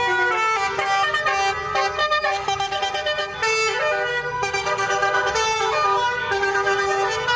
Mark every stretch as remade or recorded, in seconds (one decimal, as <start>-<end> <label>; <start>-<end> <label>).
0.0-2.0 recorded; 2.0-2.8 remade; 2.8-4.1 recorded; 4.1-5.3 remade; 5.3-7.4 recorded